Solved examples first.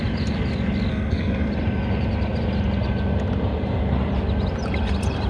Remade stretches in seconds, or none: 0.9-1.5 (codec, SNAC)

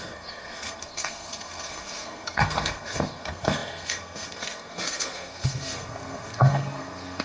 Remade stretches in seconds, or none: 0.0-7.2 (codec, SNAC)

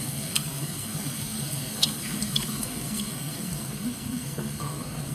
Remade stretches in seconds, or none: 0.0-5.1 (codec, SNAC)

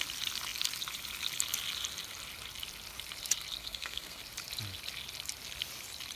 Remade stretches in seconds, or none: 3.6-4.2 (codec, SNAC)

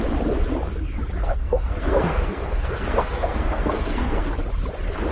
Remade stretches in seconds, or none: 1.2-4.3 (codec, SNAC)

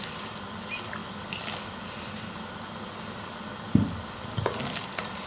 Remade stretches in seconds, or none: none